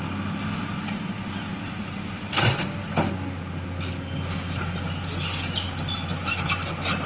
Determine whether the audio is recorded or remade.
recorded